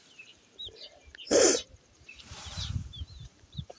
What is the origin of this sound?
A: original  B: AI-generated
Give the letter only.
B